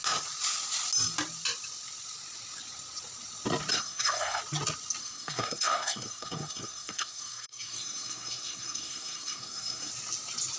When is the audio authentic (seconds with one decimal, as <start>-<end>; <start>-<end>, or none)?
0.0-3.7; 4.4-5.0; 9.9-10.6